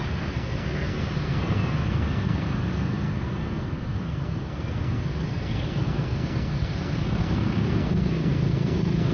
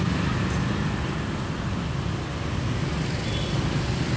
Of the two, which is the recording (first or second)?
second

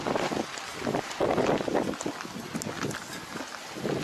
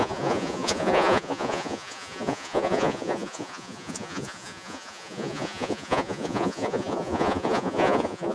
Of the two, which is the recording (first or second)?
first